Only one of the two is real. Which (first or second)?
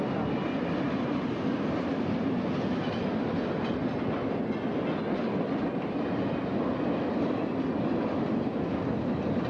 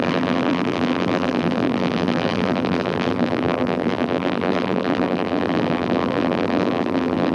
first